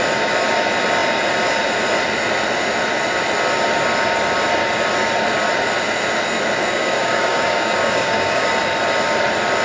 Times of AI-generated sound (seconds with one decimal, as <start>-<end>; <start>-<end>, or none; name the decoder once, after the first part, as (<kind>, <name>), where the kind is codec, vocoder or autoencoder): 6.7-8.5 (codec, DAC)